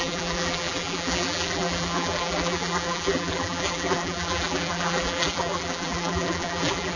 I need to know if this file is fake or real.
fake